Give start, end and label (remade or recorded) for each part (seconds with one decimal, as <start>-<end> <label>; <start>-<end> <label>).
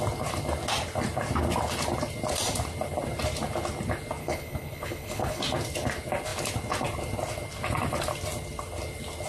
0.0-4.2 recorded; 4.2-5.4 remade; 5.4-9.3 recorded